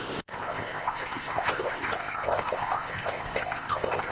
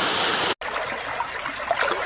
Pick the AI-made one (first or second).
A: first